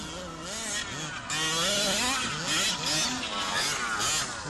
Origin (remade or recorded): recorded